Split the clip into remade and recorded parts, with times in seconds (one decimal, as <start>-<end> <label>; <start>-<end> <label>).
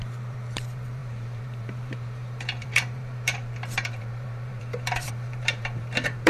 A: 0.0-6.3 remade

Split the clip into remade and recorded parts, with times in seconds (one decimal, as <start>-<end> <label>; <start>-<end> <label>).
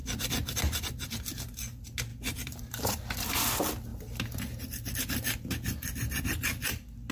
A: 0.0-1.6 remade; 1.6-2.1 recorded; 2.1-3.1 remade; 3.1-7.1 recorded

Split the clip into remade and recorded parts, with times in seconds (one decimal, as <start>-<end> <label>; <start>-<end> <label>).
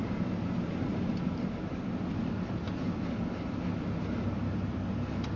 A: 0.0-0.7 remade; 0.7-5.4 recorded